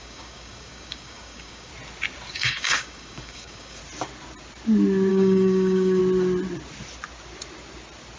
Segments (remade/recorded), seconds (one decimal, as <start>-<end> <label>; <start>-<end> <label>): 0.0-1.7 remade; 1.7-2.3 recorded; 2.3-3.8 remade; 3.8-5.1 recorded; 5.1-6.0 remade; 6.0-8.2 recorded